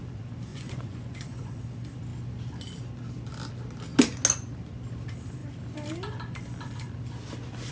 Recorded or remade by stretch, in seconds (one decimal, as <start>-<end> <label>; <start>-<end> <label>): 0.0-0.5 recorded; 0.5-1.6 remade; 1.6-7.7 recorded